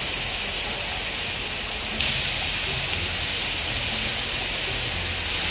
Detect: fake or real real